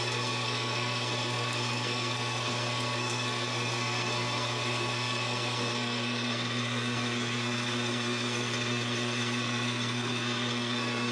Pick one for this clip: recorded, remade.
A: remade